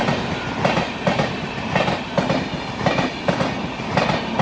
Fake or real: real